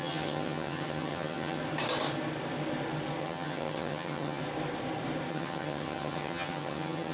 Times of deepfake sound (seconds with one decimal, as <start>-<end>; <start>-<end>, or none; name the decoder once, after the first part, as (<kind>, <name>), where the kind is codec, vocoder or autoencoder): 0.0-1.6 (vocoder, HiFi-GAN); 3.2-4.4; 5.3-7.1